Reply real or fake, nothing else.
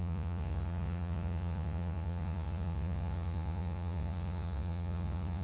fake